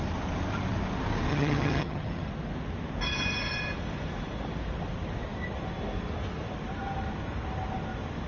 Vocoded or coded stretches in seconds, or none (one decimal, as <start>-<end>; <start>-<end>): 1.3-2.3